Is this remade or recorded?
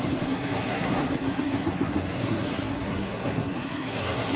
remade